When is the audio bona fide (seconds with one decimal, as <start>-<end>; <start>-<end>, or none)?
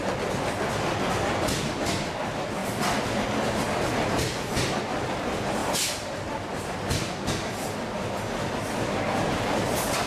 0.0-10.1